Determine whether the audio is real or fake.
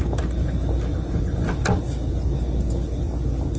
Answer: real